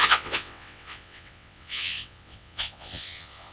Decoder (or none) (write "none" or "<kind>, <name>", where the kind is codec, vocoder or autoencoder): vocoder, WaveNeXt